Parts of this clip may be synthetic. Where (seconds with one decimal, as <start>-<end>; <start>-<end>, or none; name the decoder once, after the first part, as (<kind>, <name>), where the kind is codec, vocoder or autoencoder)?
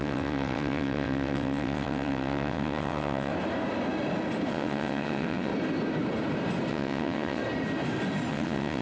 0.0-3.3 (vocoder, WaveNeXt); 4.5-5.5; 6.7-7.4; 8.3-8.8